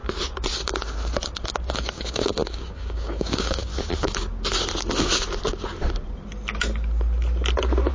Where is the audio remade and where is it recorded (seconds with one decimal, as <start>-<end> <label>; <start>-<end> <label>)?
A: 0.0-1.7 recorded; 1.7-3.7 remade; 3.7-7.9 recorded

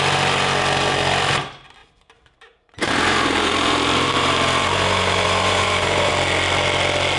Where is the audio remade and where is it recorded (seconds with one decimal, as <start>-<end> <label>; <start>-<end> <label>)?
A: 0.0-1.8 recorded; 1.8-6.1 remade; 6.1-7.2 recorded

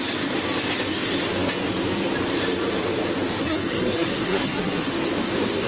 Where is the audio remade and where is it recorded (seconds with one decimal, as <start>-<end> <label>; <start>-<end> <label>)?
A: 0.0-3.4 recorded; 3.4-4.9 remade; 4.9-5.7 recorded

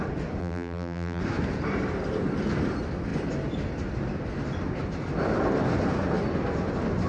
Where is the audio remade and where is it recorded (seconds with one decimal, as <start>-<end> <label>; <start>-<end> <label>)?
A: 0.0-0.4 recorded; 0.4-1.2 remade; 1.2-7.1 recorded

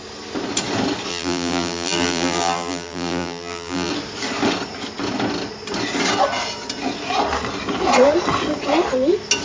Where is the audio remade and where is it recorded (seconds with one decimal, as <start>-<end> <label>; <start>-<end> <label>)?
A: 0.0-1.1 recorded; 1.1-3.9 remade; 3.9-9.4 recorded

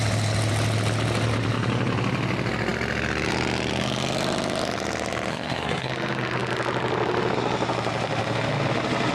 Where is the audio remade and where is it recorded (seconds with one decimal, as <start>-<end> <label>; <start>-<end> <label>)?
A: 0.0-5.3 recorded; 5.3-5.9 remade; 5.9-9.1 recorded

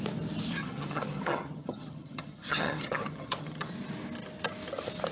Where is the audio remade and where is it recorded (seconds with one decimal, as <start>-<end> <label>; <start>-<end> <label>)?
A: 0.0-0.6 recorded; 0.6-3.7 remade; 3.7-5.1 recorded